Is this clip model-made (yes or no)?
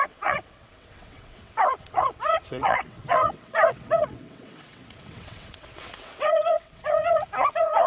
yes